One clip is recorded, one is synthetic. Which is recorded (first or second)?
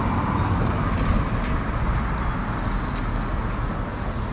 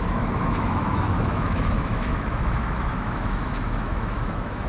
first